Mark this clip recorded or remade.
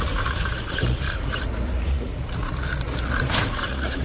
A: remade